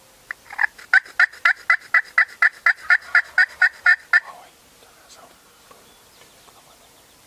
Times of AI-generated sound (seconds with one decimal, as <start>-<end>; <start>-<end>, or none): none